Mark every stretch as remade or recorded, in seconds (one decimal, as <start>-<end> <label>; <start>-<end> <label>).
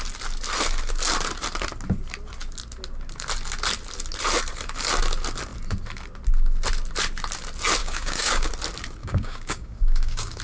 0.0-7.8 recorded; 7.8-8.5 remade; 8.5-9.0 recorded; 9.0-10.4 remade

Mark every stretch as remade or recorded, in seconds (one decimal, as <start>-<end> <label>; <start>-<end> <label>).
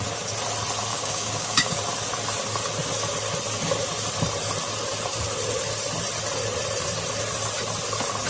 0.0-0.9 recorded; 0.9-1.8 remade; 1.8-8.3 recorded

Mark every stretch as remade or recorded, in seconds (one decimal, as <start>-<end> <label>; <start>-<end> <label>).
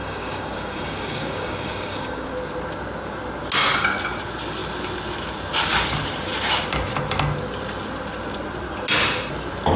0.0-2.3 remade; 2.3-9.8 recorded